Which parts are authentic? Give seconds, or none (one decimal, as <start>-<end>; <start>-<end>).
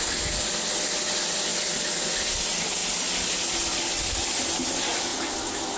0.0-5.8